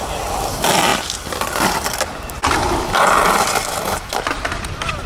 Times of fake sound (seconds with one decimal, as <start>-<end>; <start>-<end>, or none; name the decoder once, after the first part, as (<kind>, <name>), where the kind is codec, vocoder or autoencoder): none